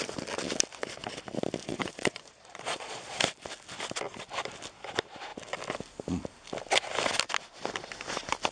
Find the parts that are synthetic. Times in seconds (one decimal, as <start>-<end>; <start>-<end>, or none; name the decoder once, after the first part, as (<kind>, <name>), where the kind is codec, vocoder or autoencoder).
1.6-3.2 (vocoder, Vocos)